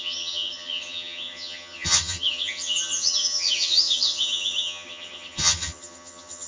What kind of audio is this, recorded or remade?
remade